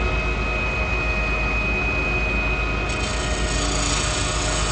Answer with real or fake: real